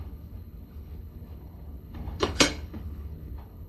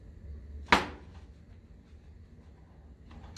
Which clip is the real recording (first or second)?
second